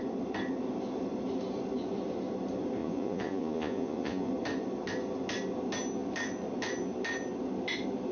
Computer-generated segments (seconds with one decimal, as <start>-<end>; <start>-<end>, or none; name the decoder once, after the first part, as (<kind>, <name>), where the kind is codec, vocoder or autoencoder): 2.8-4.3 (vocoder, Vocos)